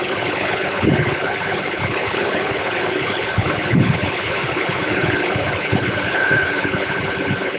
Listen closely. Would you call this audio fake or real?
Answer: fake